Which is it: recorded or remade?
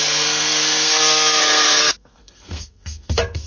remade